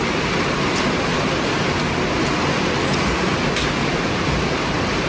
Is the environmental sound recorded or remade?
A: recorded